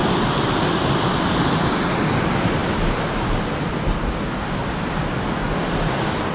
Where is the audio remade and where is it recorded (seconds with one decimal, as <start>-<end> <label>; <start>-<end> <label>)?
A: 0.0-6.3 recorded